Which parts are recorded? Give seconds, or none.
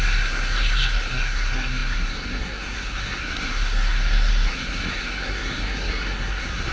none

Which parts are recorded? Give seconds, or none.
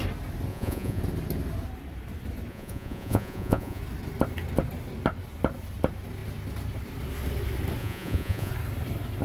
0.0-0.5; 1.0-2.5; 3.8-7.8; 8.5-9.2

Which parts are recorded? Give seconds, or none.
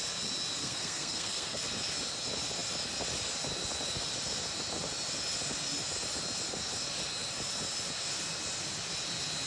0.0-0.6; 1.6-9.5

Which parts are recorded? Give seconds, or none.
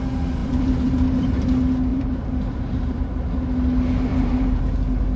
0.0-0.4; 1.5-1.9; 3.1-4.1; 4.6-5.2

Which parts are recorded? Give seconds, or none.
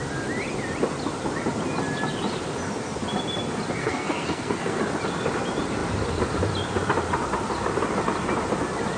0.0-3.8; 4.8-9.0